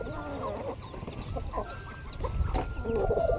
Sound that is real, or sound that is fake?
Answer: real